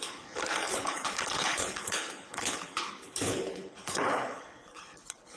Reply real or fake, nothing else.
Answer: fake